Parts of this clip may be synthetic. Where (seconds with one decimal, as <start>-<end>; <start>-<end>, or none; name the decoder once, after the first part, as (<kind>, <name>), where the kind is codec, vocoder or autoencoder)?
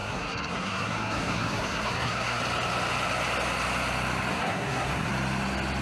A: 0.0-2.4 (codec, SNAC); 4.3-5.1